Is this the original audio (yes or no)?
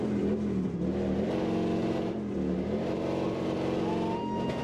yes